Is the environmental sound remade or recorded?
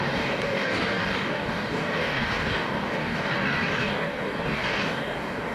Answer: remade